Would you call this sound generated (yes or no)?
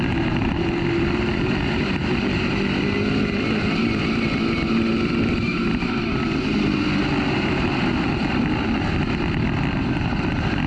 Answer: no